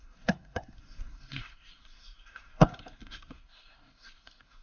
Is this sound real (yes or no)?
no